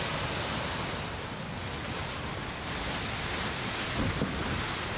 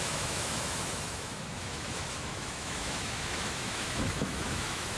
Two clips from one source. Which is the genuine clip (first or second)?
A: first